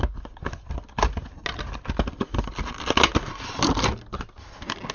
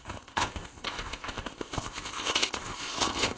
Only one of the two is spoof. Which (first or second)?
second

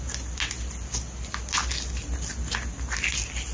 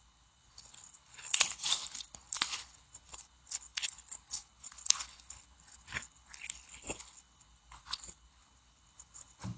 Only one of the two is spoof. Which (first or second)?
second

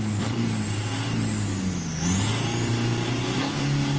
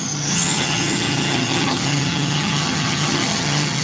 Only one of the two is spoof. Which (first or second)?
second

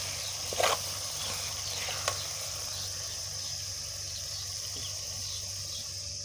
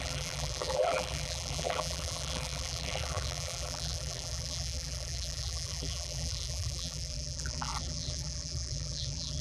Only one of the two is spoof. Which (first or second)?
second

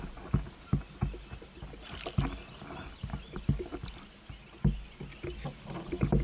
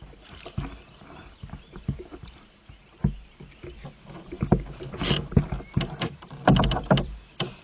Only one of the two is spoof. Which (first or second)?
second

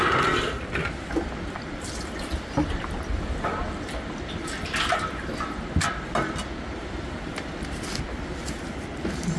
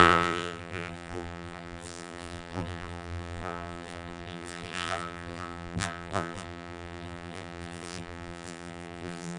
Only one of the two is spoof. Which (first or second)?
second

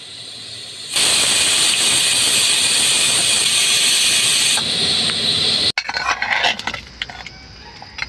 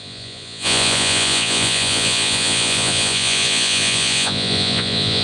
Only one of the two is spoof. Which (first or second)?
second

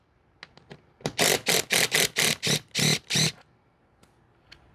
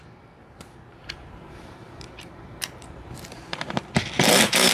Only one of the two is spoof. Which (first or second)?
second